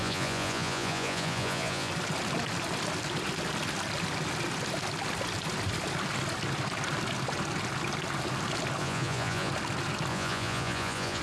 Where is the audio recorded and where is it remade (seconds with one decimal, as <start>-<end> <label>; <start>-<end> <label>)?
0.0-1.9 remade; 1.9-8.8 recorded; 8.8-9.5 remade; 9.5-10.1 recorded; 10.1-11.2 remade